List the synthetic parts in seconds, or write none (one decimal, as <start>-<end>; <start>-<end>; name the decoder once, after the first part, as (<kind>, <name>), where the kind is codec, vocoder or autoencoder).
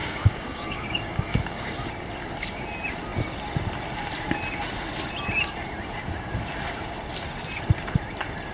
0.0-1.9 (codec, DAC)